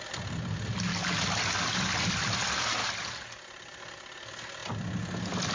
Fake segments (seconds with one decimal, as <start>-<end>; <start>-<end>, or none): 0.0-0.9; 1.5-2.8; 3.8-4.6